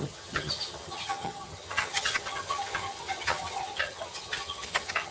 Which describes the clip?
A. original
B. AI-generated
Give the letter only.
B